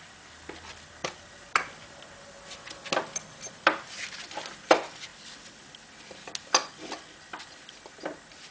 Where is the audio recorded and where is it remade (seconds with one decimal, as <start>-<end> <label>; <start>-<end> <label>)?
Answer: 0.0-1.0 recorded; 1.0-2.9 remade; 2.9-8.5 recorded